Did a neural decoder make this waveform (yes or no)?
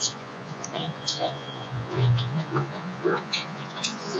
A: yes